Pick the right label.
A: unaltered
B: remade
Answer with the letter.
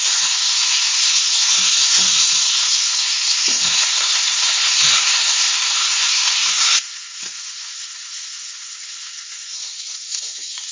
B